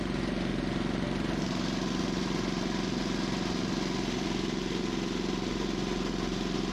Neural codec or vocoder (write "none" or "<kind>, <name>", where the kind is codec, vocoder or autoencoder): none